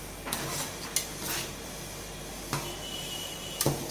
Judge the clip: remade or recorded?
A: recorded